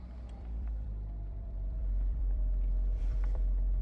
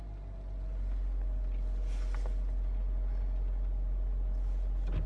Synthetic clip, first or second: first